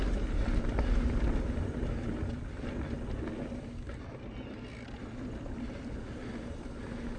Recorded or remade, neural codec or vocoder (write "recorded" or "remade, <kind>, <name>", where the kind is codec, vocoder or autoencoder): recorded